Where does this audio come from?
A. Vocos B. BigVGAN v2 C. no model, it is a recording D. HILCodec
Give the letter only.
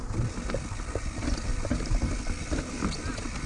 C